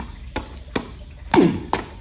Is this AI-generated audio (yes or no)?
no